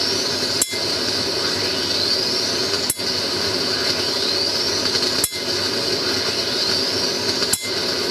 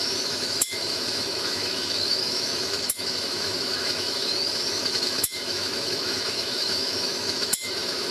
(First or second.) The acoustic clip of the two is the first